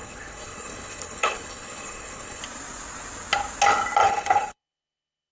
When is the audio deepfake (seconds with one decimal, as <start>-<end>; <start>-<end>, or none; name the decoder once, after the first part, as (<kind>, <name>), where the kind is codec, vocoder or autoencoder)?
0.0-2.4 (codec, HILCodec); 4.0-5.3